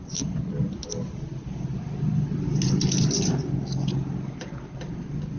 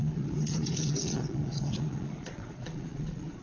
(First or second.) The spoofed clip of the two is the second